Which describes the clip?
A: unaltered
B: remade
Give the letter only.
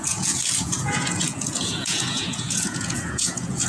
B